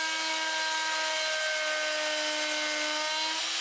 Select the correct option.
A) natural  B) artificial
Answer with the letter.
A